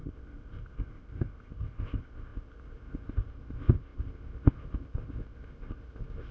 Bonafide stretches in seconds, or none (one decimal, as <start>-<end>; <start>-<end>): none